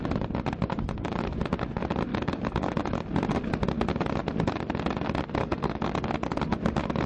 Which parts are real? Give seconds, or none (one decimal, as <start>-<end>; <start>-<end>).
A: 0.0-2.1; 2.7-5.4; 5.9-7.1